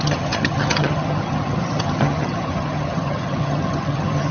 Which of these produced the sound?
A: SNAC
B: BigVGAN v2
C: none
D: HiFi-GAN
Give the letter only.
D